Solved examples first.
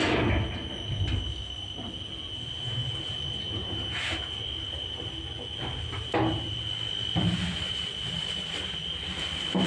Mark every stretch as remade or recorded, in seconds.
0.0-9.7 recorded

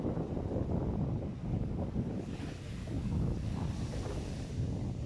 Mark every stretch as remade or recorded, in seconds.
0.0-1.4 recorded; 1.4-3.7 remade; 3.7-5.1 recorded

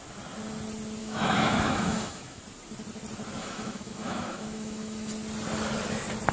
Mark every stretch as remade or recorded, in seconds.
0.0-1.0 recorded; 1.0-2.4 remade; 2.4-3.4 recorded; 3.4-5.1 remade; 5.1-6.3 recorded